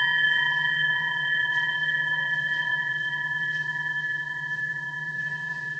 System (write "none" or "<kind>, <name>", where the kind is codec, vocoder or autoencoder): vocoder, WaveNeXt